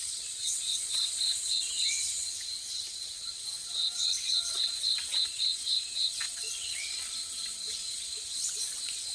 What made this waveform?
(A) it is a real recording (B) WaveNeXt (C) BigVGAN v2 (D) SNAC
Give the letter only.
B